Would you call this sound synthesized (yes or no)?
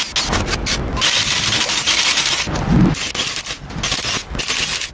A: no